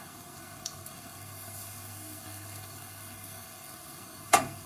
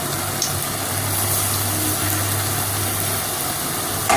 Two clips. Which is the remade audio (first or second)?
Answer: first